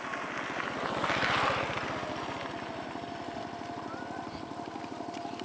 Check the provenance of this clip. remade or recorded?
recorded